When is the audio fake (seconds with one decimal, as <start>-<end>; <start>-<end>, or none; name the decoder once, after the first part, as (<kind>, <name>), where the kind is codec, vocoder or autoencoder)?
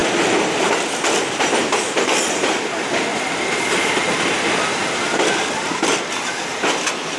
none